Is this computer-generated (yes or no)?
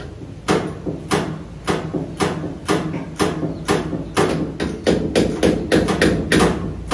no